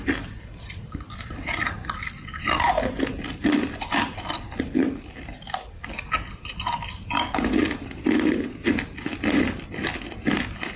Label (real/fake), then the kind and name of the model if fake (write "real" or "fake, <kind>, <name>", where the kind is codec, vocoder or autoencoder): real